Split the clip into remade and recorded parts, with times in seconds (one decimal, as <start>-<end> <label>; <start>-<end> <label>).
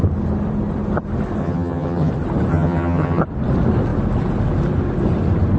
0.0-1.4 recorded; 1.4-2.1 remade; 2.1-2.5 recorded; 2.5-3.2 remade; 3.2-5.6 recorded